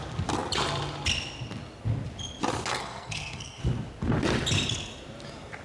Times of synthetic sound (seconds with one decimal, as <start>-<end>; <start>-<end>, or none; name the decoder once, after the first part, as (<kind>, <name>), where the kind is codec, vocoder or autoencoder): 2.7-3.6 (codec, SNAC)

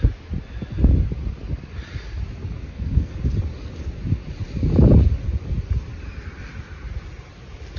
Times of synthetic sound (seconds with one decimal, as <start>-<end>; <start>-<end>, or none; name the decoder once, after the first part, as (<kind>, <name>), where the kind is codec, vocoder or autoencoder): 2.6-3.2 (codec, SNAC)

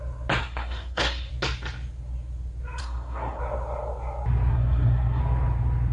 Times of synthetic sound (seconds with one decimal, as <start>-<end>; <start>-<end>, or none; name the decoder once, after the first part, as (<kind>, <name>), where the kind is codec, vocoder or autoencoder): 0.4-1.3 (codec, SNAC); 2.8-3.4; 4.5-5.2

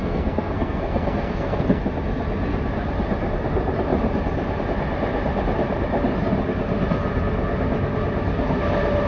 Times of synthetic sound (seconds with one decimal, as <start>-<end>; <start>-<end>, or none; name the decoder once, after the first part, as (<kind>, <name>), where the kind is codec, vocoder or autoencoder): 0.0-1.8 (codec, SNAC)

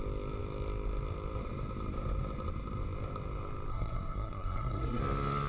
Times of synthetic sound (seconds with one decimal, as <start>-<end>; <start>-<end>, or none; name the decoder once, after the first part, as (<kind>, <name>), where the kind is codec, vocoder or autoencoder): 3.7-5.0 (codec, SNAC)

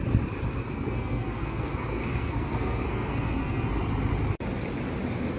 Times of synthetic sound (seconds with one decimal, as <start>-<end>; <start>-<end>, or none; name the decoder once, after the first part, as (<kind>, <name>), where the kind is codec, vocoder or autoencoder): 0.5-3.7 (codec, SNAC)

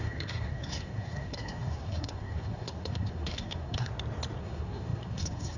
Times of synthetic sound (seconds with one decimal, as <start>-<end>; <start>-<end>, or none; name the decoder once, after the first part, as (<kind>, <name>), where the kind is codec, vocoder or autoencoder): 0.0-3.9 (codec, SNAC); 4.4-5.6